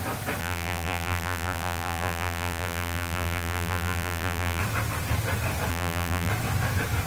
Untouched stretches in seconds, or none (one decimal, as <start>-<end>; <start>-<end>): 0.0-0.4; 4.6-5.7; 6.3-7.1